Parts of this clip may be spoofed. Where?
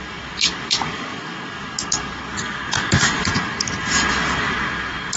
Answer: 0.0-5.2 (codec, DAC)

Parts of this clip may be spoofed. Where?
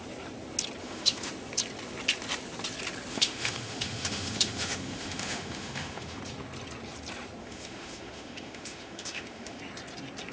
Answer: 0.8-1.3 (autoencoder, DAC-VAE); 3.1-6.2; 7.4-9.6